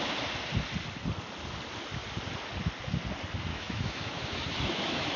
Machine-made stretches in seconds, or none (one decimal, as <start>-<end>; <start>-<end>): 3.5-5.2